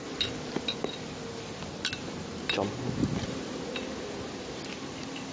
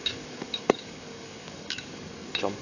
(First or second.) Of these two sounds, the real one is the first